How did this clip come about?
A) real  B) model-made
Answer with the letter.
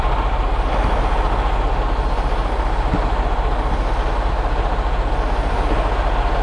A